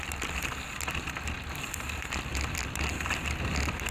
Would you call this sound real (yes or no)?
yes